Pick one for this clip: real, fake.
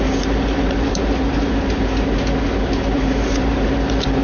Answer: fake